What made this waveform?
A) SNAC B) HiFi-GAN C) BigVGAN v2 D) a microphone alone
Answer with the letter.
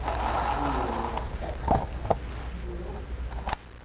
D